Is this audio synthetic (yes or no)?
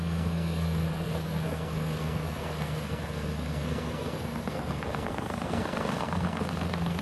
yes